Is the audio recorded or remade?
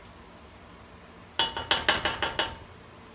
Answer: recorded